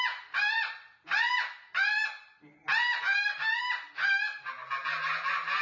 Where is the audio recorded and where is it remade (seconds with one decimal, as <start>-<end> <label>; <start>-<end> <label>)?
0.0-5.6 recorded

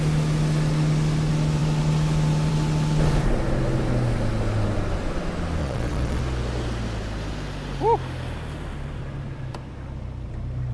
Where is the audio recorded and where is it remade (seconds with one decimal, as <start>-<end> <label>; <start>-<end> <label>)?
0.0-5.6 recorded; 5.6-6.2 remade; 6.2-10.7 recorded

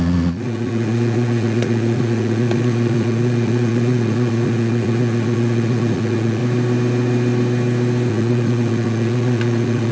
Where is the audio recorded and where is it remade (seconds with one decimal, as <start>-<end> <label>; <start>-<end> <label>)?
0.0-6.4 remade; 6.4-8.1 recorded; 8.1-9.9 remade

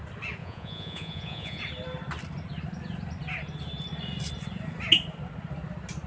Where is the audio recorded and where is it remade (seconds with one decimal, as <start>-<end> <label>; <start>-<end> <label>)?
0.0-0.4 recorded; 0.4-1.6 remade; 1.6-6.1 recorded

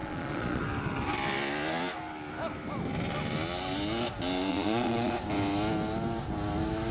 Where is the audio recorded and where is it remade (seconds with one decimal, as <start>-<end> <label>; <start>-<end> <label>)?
0.0-0.6 remade; 0.6-4.5 recorded; 4.5-5.1 remade; 5.1-6.9 recorded

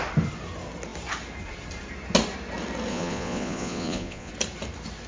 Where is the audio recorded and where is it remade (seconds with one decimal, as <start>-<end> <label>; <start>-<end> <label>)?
0.0-2.9 recorded; 2.9-4.3 remade; 4.3-5.1 recorded

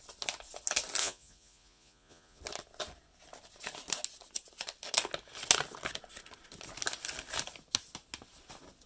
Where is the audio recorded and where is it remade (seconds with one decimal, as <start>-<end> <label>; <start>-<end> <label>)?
0.0-1.0 recorded; 1.0-2.4 remade; 2.4-8.9 recorded